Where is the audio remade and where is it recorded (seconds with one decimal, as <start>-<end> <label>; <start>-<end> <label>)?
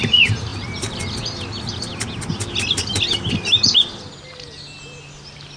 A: 0.0-5.6 recorded